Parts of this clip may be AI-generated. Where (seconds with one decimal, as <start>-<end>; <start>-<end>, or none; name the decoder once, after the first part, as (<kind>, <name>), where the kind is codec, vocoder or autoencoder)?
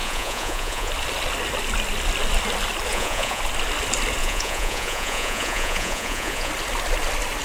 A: 0.0-0.9 (vocoder, Vocos); 2.9-3.4; 4.2-6.5